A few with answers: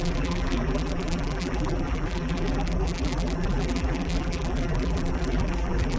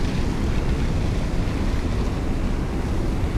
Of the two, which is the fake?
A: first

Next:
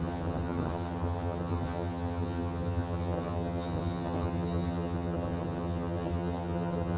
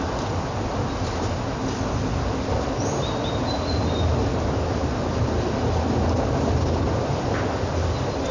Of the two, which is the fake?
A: first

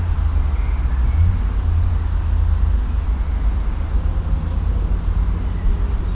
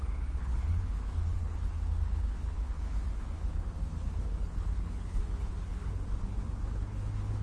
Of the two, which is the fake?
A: second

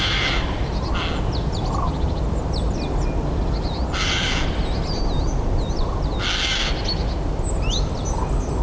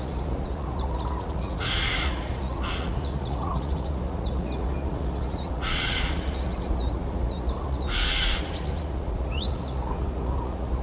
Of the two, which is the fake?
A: second